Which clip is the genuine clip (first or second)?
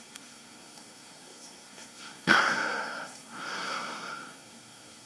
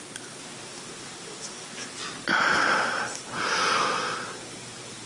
second